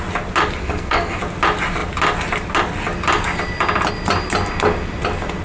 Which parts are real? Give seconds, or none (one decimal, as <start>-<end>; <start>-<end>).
0.0-0.6; 1.2-5.4